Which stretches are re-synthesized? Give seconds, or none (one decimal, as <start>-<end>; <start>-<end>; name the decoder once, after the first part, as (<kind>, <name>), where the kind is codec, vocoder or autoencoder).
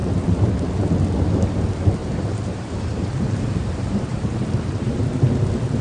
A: 2.0-5.1 (vocoder, BigVGAN v2)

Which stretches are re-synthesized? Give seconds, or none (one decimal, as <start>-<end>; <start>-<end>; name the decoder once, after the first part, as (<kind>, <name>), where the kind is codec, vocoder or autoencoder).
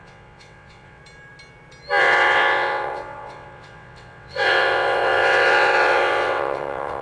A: 0.0-1.0 (vocoder, WaveNeXt); 2.0-7.0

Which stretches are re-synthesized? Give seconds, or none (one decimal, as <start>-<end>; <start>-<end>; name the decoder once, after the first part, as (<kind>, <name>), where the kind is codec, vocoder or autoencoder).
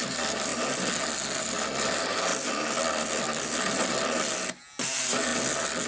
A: 0.0-0.5 (vocoder, BigVGAN v2); 1.4-5.3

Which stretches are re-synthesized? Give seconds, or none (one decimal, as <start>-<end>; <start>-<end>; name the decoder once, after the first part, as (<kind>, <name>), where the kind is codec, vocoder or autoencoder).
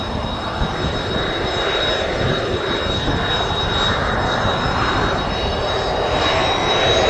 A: none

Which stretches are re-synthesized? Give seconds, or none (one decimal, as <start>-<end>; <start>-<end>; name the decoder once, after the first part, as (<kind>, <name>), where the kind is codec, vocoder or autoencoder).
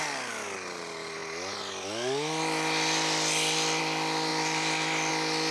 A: 4.3-5.1 (vocoder, BigVGAN v2)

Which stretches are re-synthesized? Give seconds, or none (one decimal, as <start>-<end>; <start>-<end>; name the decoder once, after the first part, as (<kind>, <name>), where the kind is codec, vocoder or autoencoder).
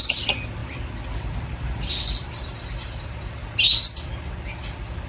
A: none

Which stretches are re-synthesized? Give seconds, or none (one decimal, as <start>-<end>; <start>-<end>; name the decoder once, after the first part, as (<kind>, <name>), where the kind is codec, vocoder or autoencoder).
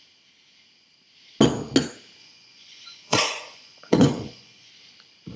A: 2.2-4.7 (vocoder, Vocos)